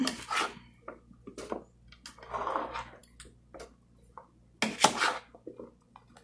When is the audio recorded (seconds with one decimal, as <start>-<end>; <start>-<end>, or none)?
0.0-6.2